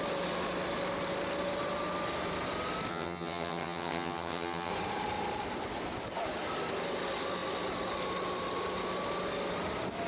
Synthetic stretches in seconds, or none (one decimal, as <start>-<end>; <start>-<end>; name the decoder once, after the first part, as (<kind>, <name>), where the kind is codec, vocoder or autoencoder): 2.9-4.7 (vocoder, HiFi-GAN)